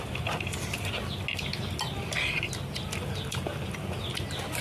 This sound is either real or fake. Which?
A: real